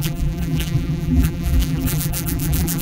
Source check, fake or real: fake